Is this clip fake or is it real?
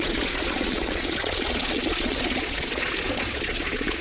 fake